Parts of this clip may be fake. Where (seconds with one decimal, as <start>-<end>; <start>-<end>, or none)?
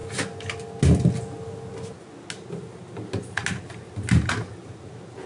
4.6-5.3